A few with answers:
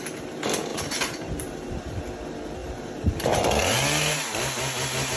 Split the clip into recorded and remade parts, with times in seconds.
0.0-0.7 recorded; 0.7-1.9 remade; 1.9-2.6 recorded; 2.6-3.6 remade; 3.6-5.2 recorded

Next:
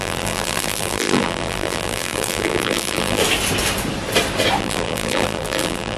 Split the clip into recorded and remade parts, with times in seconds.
0.0-3.2 remade; 3.2-4.6 recorded; 4.6-6.0 remade